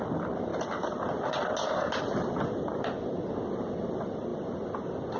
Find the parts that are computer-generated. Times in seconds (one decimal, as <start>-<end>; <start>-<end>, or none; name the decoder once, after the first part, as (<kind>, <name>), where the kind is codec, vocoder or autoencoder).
none